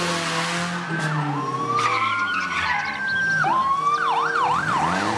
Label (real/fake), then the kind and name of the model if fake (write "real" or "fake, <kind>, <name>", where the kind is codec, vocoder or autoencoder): real